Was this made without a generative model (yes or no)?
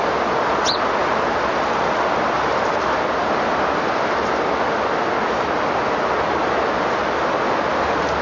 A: yes